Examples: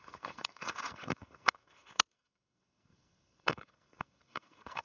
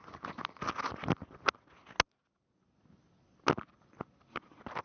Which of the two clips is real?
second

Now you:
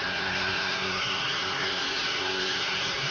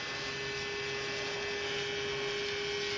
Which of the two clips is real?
second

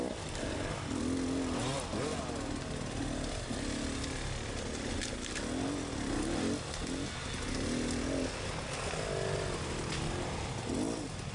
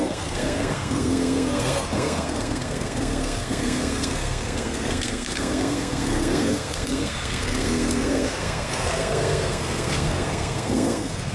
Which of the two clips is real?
first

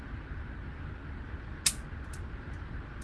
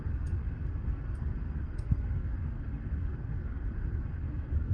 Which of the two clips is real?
first